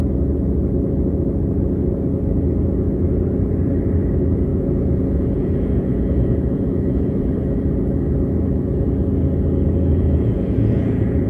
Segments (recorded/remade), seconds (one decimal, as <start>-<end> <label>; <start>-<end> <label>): 0.0-4.5 recorded; 4.5-7.3 remade; 7.3-9.9 recorded; 9.9-11.3 remade